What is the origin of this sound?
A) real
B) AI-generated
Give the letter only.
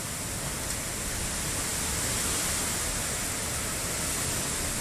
A